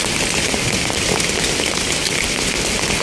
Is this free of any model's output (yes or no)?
yes